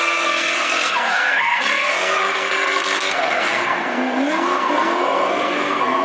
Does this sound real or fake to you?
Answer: fake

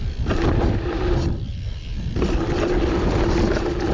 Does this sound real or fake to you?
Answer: real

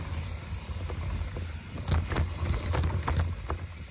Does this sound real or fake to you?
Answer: real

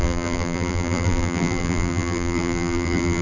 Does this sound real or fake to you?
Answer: fake